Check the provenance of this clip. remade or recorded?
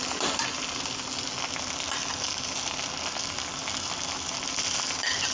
recorded